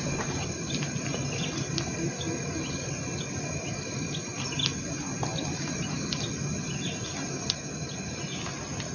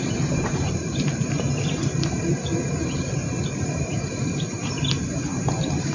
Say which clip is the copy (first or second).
second